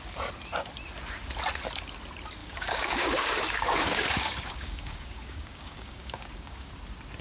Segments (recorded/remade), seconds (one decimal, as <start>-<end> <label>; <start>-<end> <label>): 0.0-2.4 recorded; 2.4-6.7 remade; 6.7-7.2 recorded